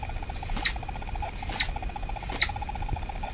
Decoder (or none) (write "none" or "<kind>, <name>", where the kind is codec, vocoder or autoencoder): none